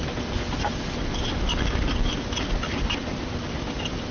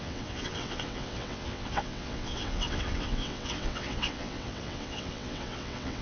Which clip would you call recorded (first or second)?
first